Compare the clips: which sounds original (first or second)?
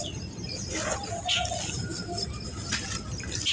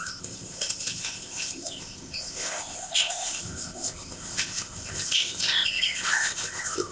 first